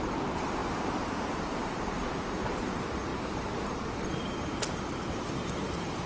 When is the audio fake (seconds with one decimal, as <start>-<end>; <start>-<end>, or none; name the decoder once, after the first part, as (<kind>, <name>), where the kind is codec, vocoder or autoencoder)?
0.0-4.5 (vocoder, BigVGAN v2); 5.2-6.1